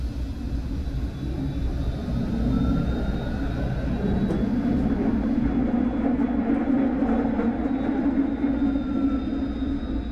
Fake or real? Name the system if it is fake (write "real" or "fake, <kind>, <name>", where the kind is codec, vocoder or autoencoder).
real